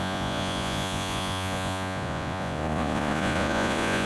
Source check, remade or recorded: remade